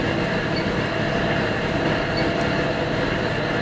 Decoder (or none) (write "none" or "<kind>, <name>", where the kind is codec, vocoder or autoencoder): none